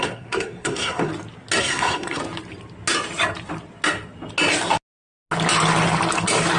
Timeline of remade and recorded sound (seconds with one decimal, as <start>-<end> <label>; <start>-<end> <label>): 0.0-1.1 remade; 1.1-1.6 recorded; 1.6-2.2 remade; 2.2-6.6 recorded